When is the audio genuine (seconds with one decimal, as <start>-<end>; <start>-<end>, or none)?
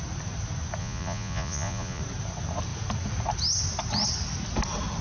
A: 0.0-0.8; 2.0-5.0